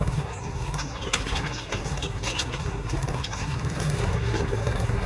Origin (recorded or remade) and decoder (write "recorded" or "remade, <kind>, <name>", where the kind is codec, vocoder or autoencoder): remade, codec, SNAC